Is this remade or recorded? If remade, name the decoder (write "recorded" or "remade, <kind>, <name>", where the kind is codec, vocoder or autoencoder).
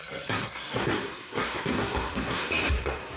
remade, codec, SNAC